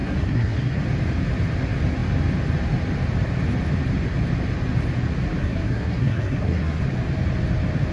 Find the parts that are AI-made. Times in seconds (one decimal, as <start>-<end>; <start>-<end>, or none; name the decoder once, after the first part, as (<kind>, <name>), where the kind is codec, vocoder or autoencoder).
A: 0.0-0.8 (codec, SNAC); 5.4-6.8